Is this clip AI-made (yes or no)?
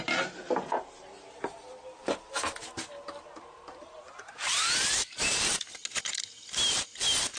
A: no